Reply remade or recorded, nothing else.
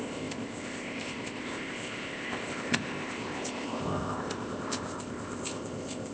remade